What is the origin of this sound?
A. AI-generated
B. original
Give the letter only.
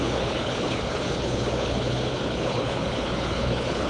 A